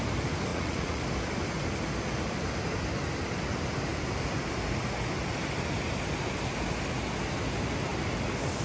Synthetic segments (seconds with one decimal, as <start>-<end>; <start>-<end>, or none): 0.5-1.0